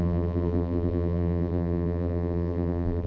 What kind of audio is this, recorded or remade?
remade